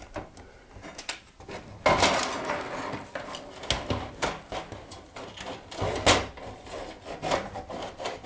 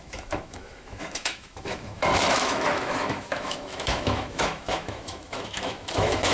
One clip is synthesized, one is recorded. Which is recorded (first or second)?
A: first